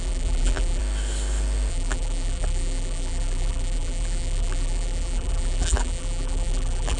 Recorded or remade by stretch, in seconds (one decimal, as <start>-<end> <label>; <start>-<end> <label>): 0.0-0.8 remade; 0.8-1.7 recorded; 1.7-7.0 remade